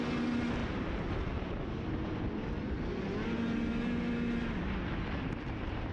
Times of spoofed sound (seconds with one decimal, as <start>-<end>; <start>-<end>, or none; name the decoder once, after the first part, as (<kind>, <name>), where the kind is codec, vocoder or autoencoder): none